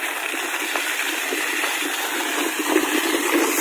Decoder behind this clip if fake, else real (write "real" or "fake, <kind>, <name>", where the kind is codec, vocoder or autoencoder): real